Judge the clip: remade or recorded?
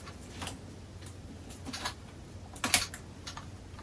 recorded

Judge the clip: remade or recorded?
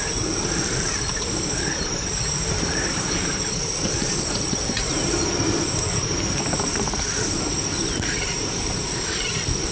remade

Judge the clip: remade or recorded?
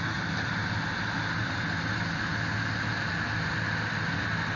recorded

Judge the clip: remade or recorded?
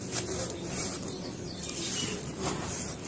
recorded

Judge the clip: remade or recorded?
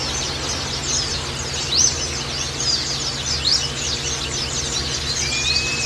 recorded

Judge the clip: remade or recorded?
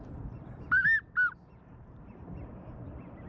remade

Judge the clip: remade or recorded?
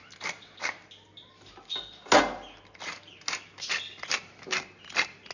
recorded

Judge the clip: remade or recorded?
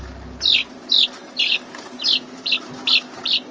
recorded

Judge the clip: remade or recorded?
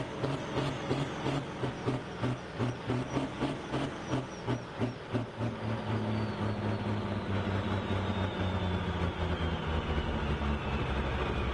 recorded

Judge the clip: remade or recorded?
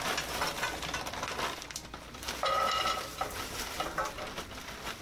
recorded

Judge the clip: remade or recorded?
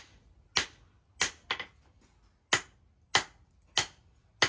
recorded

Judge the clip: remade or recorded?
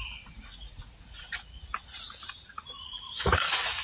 remade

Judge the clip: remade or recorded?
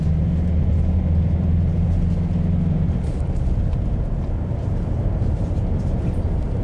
recorded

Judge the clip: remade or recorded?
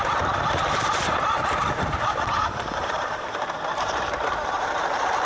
remade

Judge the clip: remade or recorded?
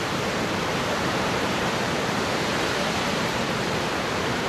remade